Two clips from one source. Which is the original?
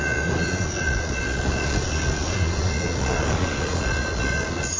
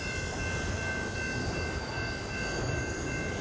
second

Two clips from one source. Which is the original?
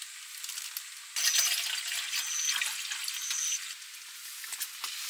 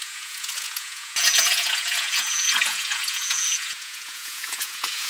first